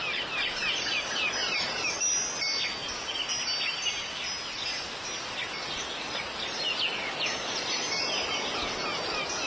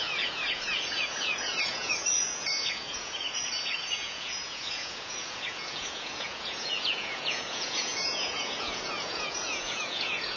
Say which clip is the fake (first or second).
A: second